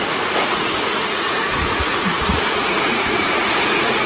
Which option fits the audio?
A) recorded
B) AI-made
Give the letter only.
B